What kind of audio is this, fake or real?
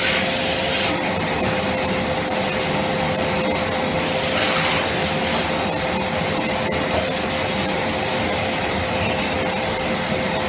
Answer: real